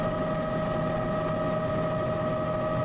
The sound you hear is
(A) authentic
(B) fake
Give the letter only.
A